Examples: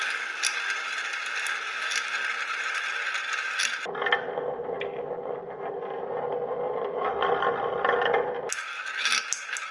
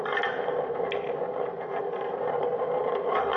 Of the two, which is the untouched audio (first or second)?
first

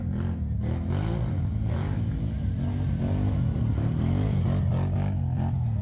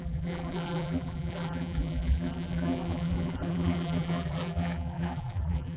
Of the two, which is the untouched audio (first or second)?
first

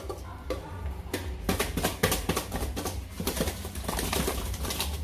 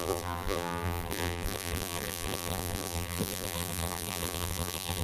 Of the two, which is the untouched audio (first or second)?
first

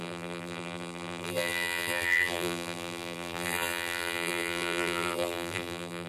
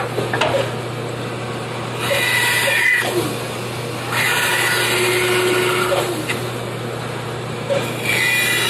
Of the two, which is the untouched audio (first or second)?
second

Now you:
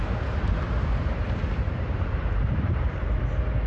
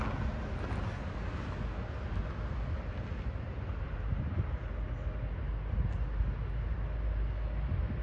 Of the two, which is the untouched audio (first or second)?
second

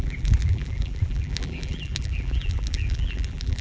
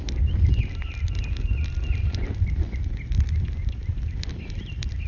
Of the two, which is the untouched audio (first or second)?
second